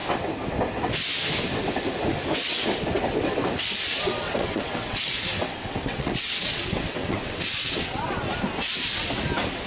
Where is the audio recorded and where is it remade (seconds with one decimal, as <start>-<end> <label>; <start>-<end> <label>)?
0.0-3.9 recorded; 3.9-5.0 remade; 5.0-5.4 recorded; 5.4-8.2 remade; 8.2-9.7 recorded